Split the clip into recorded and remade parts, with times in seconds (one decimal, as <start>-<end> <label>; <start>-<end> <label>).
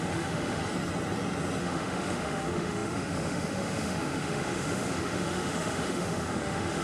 0.0-0.6 remade; 0.6-1.6 recorded; 1.6-6.8 remade